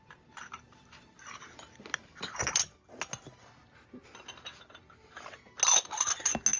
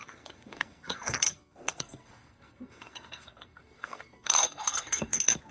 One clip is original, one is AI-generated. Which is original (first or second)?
first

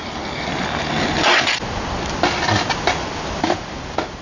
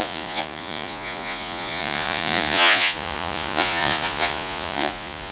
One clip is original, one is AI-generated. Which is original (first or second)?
first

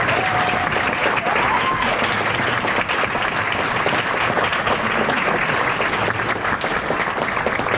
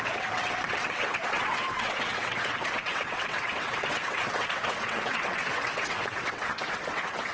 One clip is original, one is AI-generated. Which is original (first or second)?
first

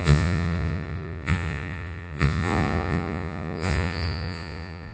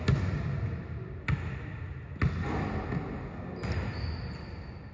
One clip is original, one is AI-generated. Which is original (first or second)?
second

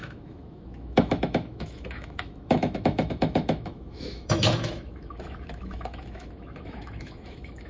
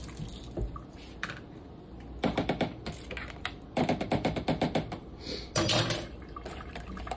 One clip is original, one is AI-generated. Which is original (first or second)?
second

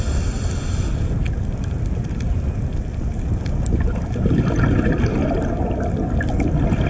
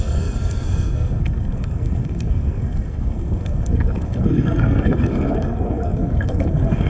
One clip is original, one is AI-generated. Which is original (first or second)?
first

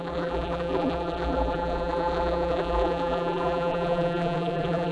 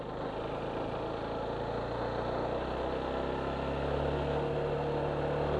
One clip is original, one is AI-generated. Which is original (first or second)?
second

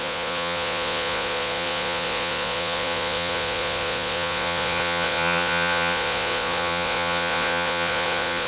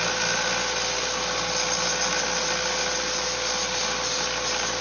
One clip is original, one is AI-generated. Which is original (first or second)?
second